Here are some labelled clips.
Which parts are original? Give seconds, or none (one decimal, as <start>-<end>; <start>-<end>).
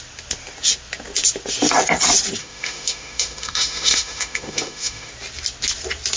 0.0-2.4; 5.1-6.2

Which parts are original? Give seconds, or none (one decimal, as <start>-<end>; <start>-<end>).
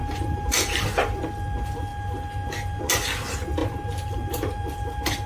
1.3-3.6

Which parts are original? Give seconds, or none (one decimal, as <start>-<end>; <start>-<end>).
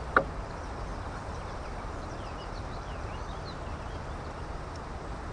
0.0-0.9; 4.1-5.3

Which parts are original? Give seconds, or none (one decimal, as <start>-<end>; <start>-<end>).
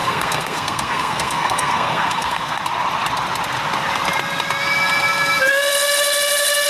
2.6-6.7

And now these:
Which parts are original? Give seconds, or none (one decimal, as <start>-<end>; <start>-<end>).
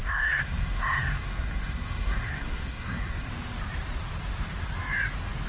3.3-5.5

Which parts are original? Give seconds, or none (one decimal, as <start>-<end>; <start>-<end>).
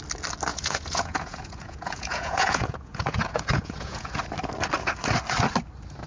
0.0-0.5; 4.2-6.1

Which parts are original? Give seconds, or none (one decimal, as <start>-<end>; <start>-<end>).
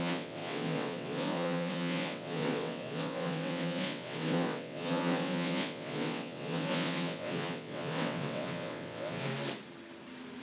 9.3-10.4